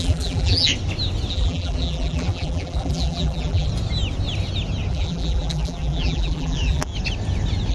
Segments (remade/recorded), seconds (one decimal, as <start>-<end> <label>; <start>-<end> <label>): 0.0-0.7 remade; 0.7-1.3 recorded; 1.3-3.7 remade; 3.7-4.9 recorded; 4.9-6.9 remade; 6.9-7.7 recorded